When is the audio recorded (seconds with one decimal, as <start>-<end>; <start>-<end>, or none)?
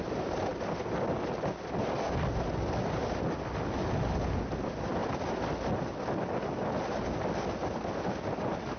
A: 0.0-8.8